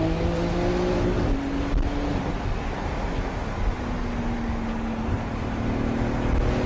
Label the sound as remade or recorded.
recorded